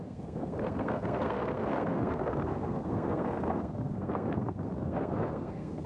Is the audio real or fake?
fake